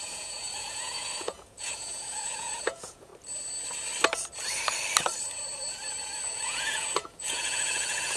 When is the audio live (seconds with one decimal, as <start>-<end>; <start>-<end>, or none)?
3.1-6.2